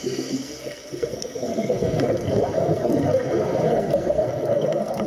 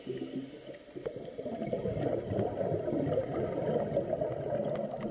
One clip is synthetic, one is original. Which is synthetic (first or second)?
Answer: first